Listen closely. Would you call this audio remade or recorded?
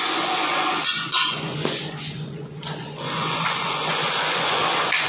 remade